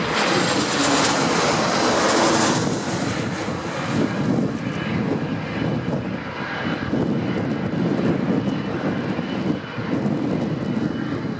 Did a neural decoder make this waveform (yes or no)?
no